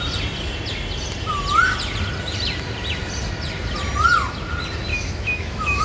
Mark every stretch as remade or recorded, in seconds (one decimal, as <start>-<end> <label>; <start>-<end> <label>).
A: 0.0-4.9 recorded; 4.9-5.8 remade